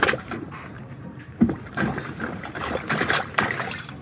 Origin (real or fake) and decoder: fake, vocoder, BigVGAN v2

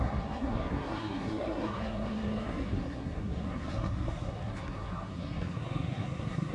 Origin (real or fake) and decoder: fake, codec, SNAC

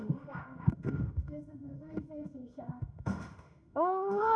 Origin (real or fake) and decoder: fake, autoencoder, DAC-VAE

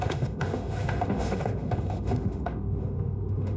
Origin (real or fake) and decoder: fake, autoencoder, DAC-VAE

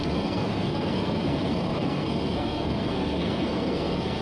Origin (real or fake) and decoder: fake, codec, SNAC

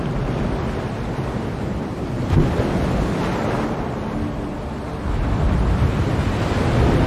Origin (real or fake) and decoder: real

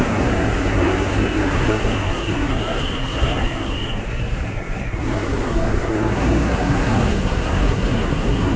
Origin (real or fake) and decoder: fake, codec, SNAC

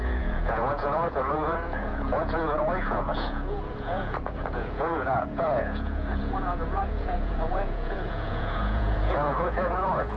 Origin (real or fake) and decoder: fake, vocoder, Vocos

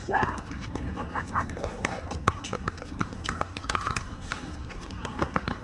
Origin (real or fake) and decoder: fake, codec, SNAC